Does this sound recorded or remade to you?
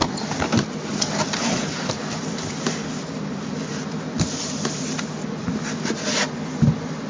remade